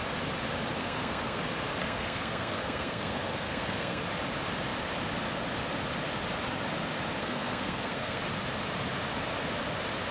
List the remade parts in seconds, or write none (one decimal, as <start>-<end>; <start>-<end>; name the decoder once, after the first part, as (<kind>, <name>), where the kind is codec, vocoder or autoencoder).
0.8-1.4 (codec, SNAC); 1.8-4.0; 7.2-8.2